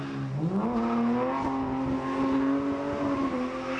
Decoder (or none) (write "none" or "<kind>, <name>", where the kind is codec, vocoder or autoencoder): none